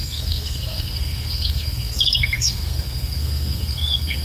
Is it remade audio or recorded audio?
remade